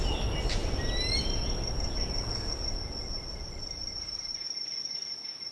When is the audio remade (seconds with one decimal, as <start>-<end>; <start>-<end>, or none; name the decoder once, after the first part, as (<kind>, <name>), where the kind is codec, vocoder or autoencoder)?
none